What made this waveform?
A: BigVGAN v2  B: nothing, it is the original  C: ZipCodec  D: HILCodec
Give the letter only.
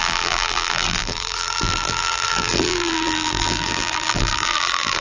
A